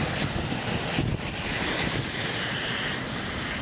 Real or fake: real